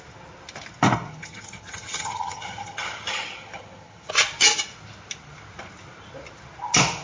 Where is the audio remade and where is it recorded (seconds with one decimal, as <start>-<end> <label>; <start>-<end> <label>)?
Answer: 0.0-1.1 recorded; 1.1-4.1 remade; 4.1-7.0 recorded